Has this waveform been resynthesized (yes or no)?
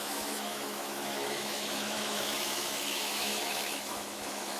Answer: yes